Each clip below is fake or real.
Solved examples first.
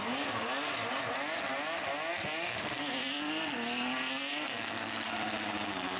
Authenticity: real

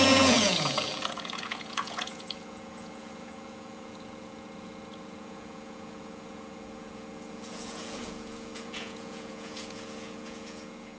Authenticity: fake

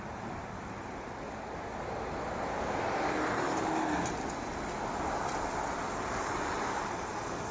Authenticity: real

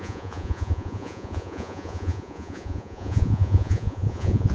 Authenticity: fake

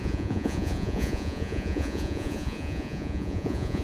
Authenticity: fake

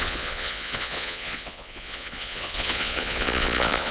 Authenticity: fake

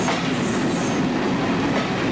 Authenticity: real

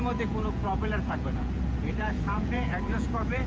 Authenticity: fake